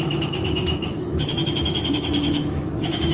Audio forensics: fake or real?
fake